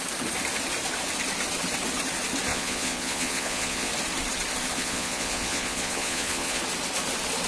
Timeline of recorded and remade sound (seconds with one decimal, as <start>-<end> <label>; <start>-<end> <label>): 0.0-2.5 recorded; 2.5-3.9 remade; 3.9-4.7 recorded; 4.7-6.6 remade; 6.6-7.5 recorded